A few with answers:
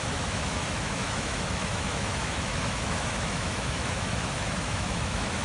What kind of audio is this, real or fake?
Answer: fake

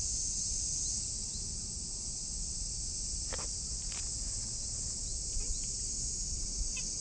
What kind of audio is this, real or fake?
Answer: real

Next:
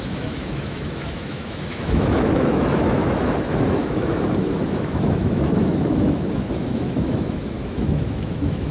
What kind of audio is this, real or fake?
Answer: fake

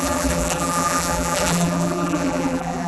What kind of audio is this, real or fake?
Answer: fake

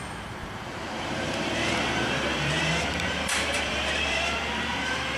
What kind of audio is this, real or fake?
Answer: fake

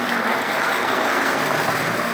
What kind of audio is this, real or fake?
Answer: fake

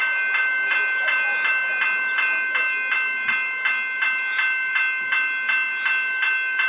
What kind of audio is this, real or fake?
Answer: real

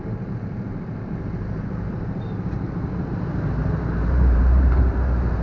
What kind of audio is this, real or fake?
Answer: fake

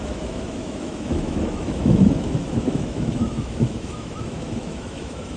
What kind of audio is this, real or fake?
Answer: fake